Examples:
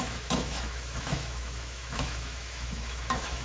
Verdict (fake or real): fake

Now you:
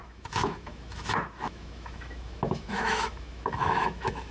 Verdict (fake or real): fake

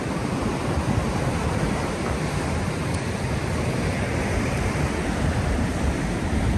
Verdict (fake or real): real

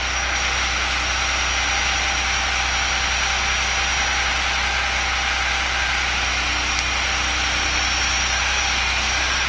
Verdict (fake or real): real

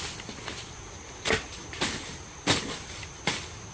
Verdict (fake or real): real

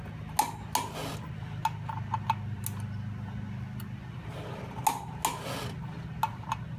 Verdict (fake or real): real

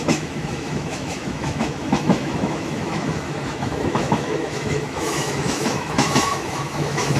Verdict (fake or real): fake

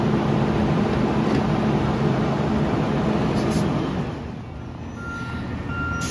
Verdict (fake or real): real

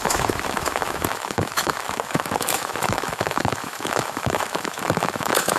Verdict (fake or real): fake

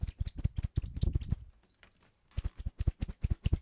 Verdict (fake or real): real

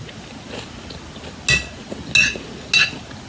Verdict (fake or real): real